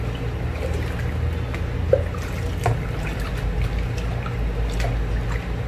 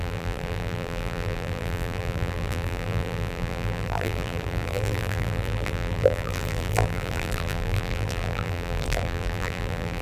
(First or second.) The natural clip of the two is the first